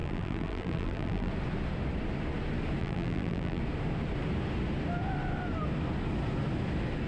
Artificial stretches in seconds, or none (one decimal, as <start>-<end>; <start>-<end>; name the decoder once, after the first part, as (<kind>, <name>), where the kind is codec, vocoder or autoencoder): 0.0-1.3 (vocoder, BigVGAN v2); 2.8-3.6

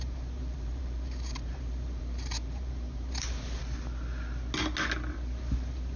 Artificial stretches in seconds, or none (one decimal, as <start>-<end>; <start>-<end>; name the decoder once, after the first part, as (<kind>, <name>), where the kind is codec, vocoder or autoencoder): 0.0-3.6 (vocoder, BigVGAN v2); 5.1-6.0

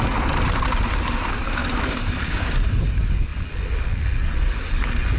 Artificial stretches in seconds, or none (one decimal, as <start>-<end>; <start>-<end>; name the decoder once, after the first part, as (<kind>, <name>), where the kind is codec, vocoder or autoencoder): 1.6-2.7 (vocoder, BigVGAN v2)

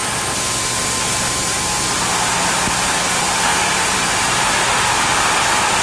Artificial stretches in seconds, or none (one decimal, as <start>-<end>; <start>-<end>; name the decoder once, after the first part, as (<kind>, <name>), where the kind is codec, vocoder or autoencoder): 0.0-0.5 (vocoder, BigVGAN v2)